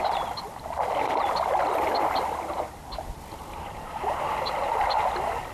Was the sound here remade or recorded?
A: recorded